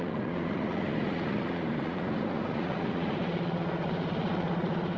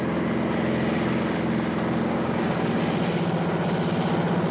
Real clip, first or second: second